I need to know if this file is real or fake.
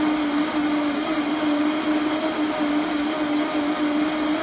real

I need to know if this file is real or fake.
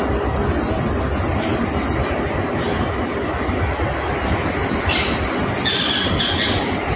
real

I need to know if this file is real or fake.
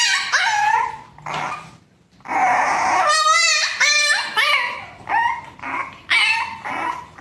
real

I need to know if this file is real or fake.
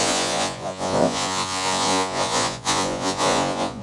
fake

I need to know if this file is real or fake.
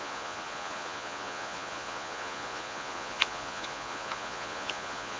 fake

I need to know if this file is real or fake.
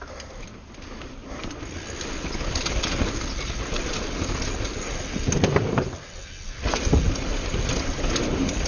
real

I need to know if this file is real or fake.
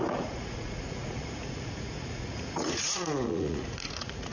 fake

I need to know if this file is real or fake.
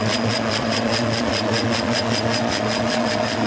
fake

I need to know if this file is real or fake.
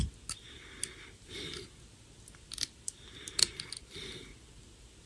real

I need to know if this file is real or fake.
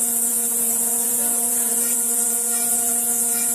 fake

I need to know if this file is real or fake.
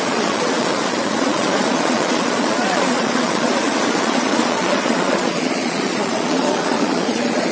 fake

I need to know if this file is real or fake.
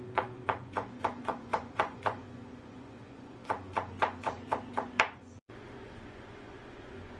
fake